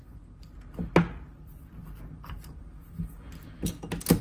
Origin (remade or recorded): recorded